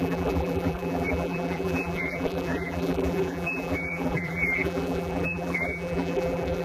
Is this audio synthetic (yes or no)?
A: yes